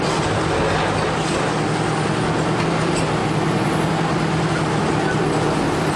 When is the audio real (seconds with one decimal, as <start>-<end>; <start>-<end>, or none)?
0.0-6.0